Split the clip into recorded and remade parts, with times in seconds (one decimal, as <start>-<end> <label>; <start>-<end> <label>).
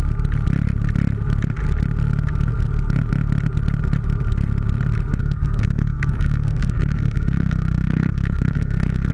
0.0-5.2 recorded; 5.2-9.1 remade